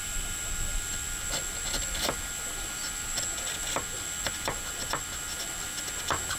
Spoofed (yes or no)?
no